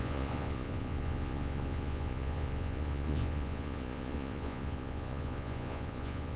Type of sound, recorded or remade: remade